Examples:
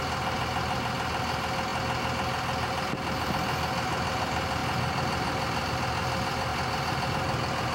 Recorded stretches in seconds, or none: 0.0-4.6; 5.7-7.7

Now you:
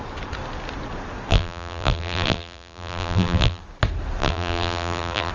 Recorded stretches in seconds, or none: 0.0-1.3; 3.6-4.2

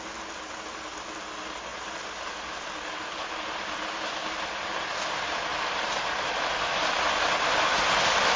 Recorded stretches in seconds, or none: 0.0-8.4

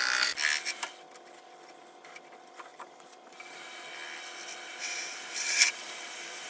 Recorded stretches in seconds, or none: 0.0-2.7; 3.8-4.7